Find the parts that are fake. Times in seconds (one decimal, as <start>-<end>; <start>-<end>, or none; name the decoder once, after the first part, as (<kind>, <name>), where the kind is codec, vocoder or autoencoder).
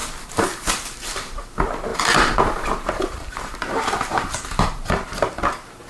0.0-1.5 (vocoder, BigVGAN v2); 1.9-5.4